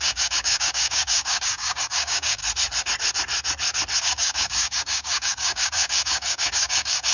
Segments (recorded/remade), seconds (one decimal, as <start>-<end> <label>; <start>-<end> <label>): 0.0-2.4 remade; 2.4-4.0 recorded; 4.0-7.1 remade

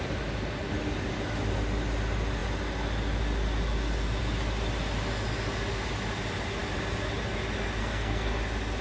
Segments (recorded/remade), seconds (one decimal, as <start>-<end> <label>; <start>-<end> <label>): 0.0-7.8 recorded; 7.8-8.4 remade; 8.4-8.8 recorded